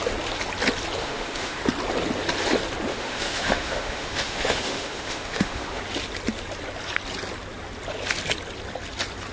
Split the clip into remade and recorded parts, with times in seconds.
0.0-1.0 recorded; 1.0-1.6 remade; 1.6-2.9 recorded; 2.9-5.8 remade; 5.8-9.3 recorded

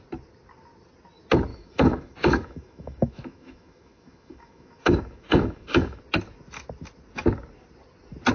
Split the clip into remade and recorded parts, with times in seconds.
0.0-1.5 recorded; 1.5-6.0 remade; 6.0-8.3 recorded

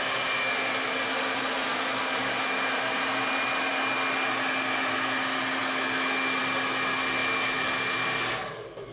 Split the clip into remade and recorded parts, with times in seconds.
0.0-8.9 recorded

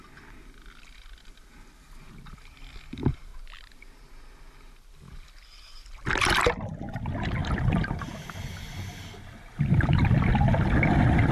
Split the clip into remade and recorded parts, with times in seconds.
0.0-7.4 recorded; 7.4-8.2 remade; 8.2-11.3 recorded

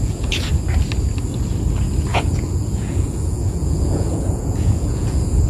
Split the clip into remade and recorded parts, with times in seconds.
0.0-0.5 remade; 0.5-2.1 recorded; 2.1-5.5 remade

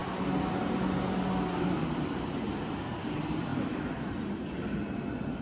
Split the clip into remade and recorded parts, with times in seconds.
0.0-5.4 recorded

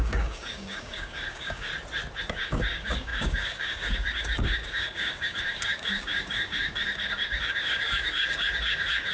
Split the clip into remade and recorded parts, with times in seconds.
0.0-1.7 remade; 1.7-2.3 recorded; 2.3-9.1 remade